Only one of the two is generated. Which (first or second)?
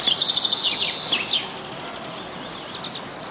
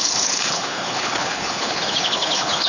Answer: second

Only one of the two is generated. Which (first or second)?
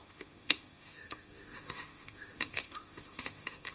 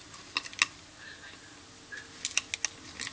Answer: first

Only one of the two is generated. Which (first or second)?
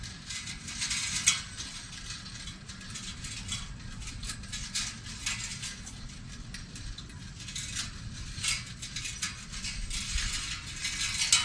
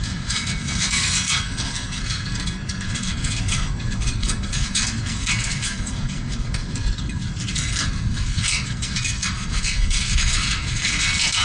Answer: second